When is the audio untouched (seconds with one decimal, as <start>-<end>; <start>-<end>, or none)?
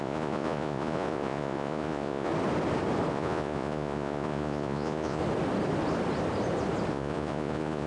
2.3-3.1; 5.2-6.9